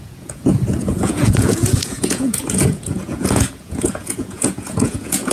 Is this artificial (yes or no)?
yes